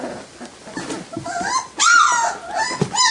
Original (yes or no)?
yes